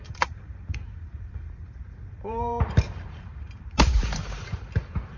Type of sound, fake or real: fake